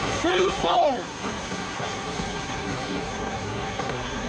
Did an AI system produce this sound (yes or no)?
yes